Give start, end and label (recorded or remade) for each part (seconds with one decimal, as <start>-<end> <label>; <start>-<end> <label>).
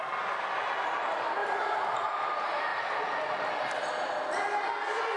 0.0-1.4 recorded; 1.4-2.2 remade; 2.2-5.2 recorded